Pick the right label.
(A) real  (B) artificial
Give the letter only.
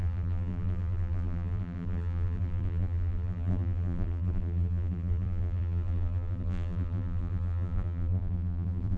B